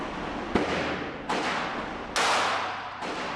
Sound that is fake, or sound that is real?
real